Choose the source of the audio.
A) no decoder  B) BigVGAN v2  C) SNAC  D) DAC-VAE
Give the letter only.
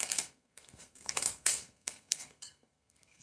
C